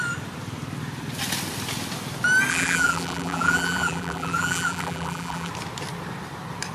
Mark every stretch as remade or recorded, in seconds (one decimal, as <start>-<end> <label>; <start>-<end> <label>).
0.0-2.5 recorded; 2.5-5.5 remade; 5.5-6.7 recorded